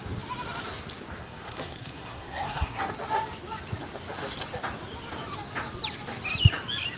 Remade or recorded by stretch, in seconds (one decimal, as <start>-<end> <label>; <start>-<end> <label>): 0.0-1.2 recorded; 1.2-2.8 remade; 2.8-7.0 recorded